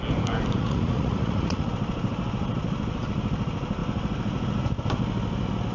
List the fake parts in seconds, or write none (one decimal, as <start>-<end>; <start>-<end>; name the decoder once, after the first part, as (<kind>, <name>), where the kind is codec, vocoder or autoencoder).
0.6-1.7 (vocoder, Vocos)